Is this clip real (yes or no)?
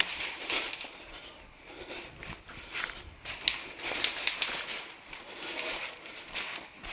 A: yes